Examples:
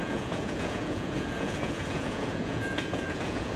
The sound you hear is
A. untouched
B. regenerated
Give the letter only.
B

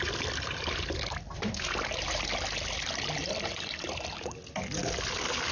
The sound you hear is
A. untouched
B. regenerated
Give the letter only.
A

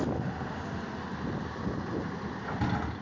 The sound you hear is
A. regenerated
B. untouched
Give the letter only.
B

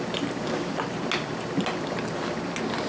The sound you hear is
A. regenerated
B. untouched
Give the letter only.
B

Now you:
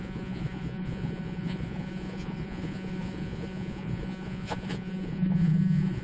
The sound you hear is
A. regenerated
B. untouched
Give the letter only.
A